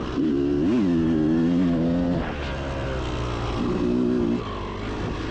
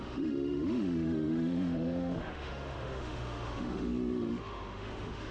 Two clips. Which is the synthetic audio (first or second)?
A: second